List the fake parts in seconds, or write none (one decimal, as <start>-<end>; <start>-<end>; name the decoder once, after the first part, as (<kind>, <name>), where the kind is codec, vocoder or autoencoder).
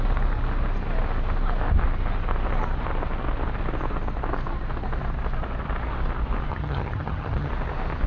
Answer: 6.5-7.5 (vocoder, HiFi-GAN)